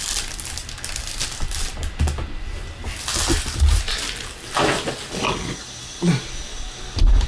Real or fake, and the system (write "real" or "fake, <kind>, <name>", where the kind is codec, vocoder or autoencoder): real